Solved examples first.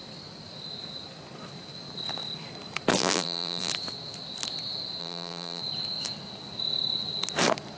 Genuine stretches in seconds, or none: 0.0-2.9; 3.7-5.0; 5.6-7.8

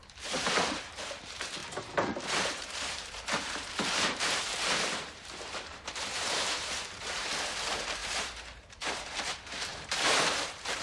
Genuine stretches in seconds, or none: 1.6-2.4

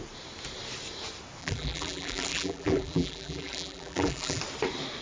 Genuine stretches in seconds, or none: 0.0-1.4; 4.4-5.0